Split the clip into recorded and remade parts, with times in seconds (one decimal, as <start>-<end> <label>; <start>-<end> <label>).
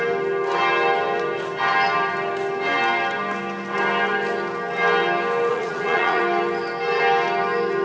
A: 0.0-5.5 recorded; 5.5-6.2 remade; 6.2-7.8 recorded